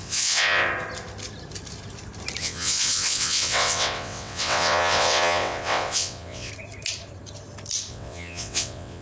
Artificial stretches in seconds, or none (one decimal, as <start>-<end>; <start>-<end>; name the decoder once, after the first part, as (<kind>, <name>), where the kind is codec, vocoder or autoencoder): 0.0-0.7 (vocoder, WaveNeXt); 2.4-6.5; 7.9-9.0